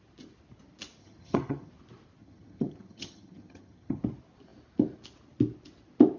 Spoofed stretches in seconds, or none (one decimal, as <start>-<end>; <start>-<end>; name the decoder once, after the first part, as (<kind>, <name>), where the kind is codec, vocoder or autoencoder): 1.0-1.7 (vocoder, HiFi-GAN); 2.2-4.0